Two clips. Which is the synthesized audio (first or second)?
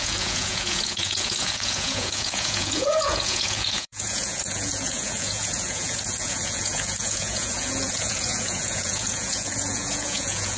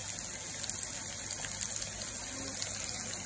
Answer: first